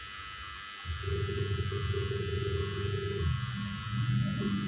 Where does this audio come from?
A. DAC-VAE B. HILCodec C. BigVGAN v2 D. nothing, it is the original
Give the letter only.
D